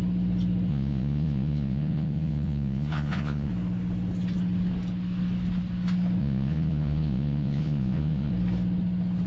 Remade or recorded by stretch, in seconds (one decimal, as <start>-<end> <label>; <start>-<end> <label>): 0.0-0.7 recorded; 0.7-3.5 remade; 3.5-6.2 recorded; 6.2-8.3 remade; 8.3-9.3 recorded